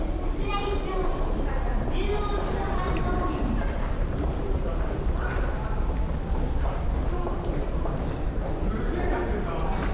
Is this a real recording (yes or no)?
no